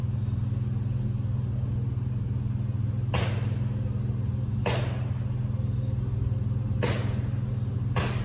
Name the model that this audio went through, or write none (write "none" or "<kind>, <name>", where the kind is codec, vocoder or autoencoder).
none